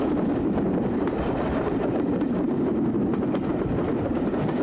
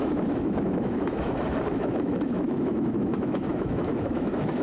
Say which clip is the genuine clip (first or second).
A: first